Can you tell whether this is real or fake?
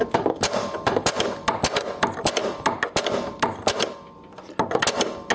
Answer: real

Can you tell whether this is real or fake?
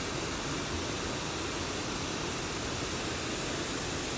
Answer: real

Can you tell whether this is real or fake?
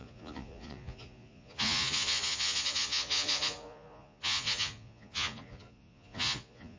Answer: fake